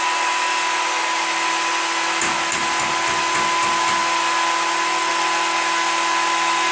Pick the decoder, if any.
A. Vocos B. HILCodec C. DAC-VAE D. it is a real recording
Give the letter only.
D